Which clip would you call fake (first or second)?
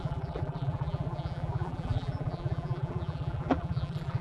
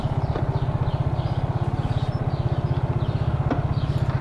first